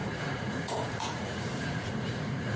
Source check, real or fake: fake